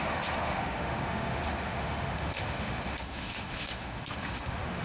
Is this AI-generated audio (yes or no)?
yes